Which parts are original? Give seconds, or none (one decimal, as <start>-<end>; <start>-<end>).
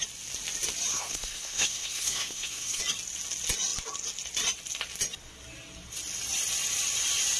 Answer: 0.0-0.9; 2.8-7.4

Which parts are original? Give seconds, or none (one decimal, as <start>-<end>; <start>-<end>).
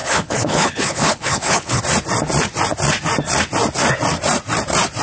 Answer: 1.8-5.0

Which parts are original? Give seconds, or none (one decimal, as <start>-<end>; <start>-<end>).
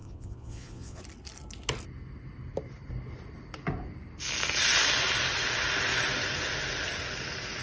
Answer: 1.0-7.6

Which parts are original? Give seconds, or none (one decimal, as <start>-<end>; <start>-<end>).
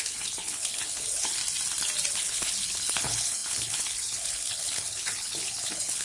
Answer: 1.4-2.1